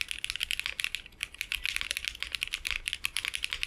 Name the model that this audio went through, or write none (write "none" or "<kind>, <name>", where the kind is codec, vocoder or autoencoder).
none